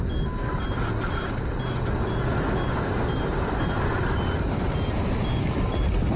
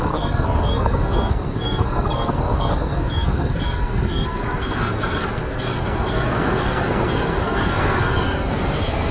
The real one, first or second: first